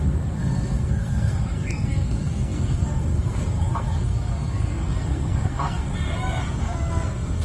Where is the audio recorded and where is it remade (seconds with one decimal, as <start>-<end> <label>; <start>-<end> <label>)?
0.0-5.9 remade; 5.9-6.6 recorded; 6.6-7.4 remade